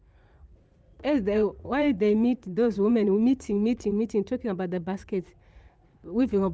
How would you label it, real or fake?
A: fake